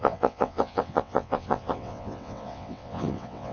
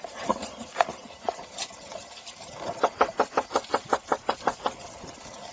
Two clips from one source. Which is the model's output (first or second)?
first